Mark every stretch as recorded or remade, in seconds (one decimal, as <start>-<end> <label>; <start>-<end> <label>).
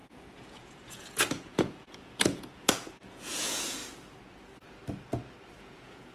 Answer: 0.0-3.8 remade; 3.8-5.6 recorded; 5.6-6.1 remade